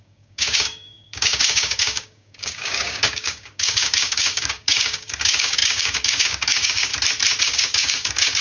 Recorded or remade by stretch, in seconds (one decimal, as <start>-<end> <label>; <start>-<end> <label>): 0.0-6.9 remade; 6.9-7.4 recorded; 7.4-8.4 remade